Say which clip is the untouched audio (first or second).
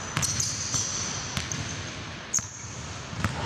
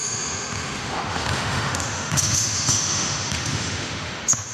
first